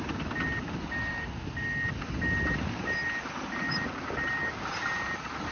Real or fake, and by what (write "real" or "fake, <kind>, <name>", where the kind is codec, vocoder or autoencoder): real